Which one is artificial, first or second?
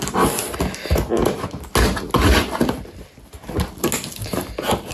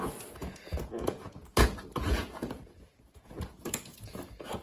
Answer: second